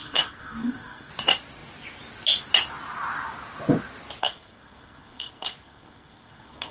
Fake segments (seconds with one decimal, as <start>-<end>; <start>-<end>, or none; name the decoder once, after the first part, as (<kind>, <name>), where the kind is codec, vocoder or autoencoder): 0.0-1.1 (codec, SNAC); 4.2-6.7